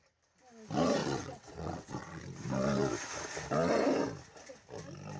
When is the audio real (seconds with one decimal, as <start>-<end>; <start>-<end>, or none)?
0.0-1.0; 2.2-5.2

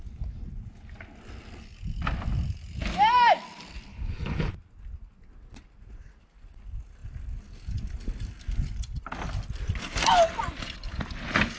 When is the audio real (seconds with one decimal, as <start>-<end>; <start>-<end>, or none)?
0.0-3.9; 4.5-11.6

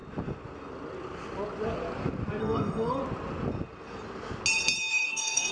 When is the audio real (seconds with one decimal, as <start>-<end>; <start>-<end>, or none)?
0.0-2.4; 3.0-4.9

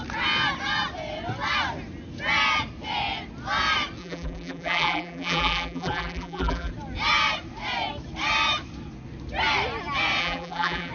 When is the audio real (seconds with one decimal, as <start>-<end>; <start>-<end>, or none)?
0.0-4.0; 6.7-10.2

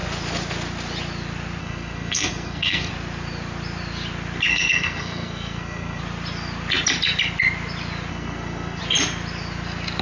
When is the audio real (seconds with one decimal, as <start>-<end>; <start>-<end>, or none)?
0.0-1.6; 2.9-4.5; 6.0-8.1; 8.8-10.0

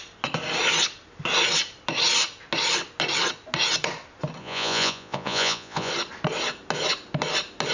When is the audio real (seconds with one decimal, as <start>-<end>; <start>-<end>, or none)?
0.0-4.4; 5.9-7.7

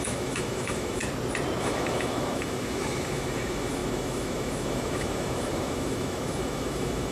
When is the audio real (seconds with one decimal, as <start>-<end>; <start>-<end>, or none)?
1.0-1.6

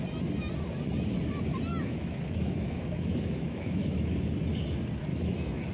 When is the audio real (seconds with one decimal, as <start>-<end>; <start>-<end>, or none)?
0.0-1.7; 4.2-5.1